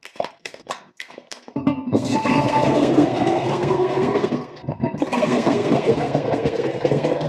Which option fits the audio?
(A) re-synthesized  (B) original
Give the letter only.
A